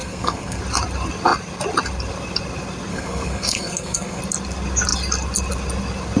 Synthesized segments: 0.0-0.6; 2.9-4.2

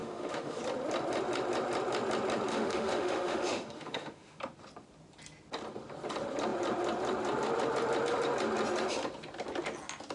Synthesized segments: 0.0-0.6; 2.5-4.4

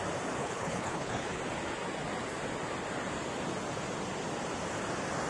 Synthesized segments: 0.4-1.4

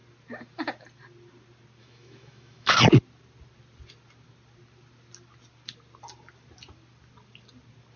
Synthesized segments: 1.8-2.7

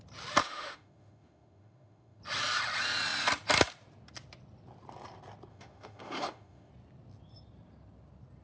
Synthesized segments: 0.4-2.2; 5.5-6.7

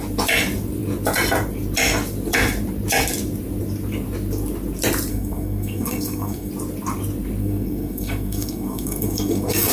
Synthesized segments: 5.1-6.5; 7.4-9.7

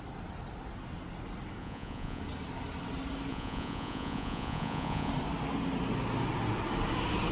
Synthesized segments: 1.6-2.2; 3.3-5.1